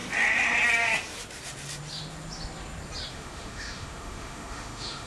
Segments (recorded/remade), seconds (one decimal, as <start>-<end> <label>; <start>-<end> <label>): 0.0-3.1 recorded; 3.1-5.1 remade

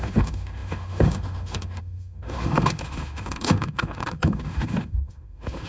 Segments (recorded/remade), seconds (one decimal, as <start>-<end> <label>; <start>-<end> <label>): 0.0-5.7 remade

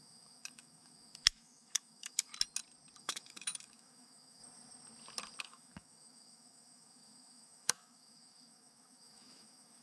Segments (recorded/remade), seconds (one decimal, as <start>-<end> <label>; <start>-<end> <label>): 0.0-2.3 remade; 2.3-3.0 recorded; 3.0-4.4 remade; 4.4-5.4 recorded; 5.4-9.8 remade

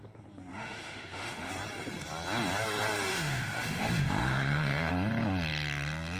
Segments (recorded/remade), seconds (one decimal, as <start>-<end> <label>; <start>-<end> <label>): 0.0-0.5 recorded; 0.5-1.5 remade; 1.5-3.1 recorded; 3.1-4.9 remade; 4.9-6.2 recorded

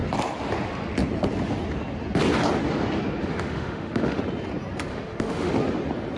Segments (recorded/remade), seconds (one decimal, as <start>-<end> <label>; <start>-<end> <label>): 0.0-3.2 recorded; 3.2-4.2 remade; 4.2-4.9 recorded; 4.9-5.5 remade; 5.5-6.2 recorded

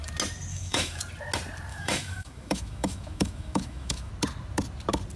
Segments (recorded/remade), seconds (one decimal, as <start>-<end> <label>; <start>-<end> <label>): 0.0-0.5 recorded; 0.5-1.0 remade; 1.0-1.7 recorded; 1.7-4.1 remade; 4.1-5.2 recorded

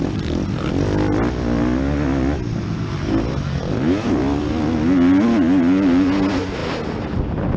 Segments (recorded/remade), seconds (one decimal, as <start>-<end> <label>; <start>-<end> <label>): 0.0-7.6 recorded